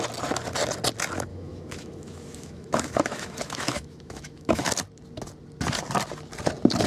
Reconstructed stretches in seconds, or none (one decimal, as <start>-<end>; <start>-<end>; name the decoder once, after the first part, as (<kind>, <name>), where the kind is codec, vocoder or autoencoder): 1.3-4.7 (autoencoder, DAC-VAE)